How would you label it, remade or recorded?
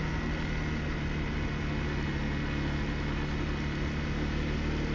recorded